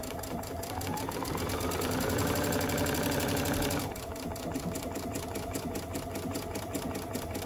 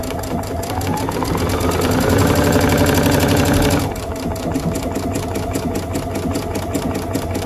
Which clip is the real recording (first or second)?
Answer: second